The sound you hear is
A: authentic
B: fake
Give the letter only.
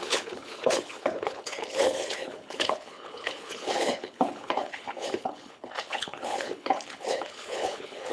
B